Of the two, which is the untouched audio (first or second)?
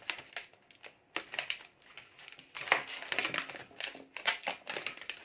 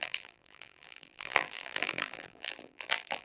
first